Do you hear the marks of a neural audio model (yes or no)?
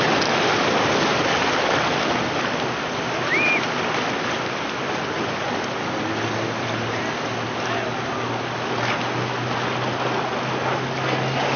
no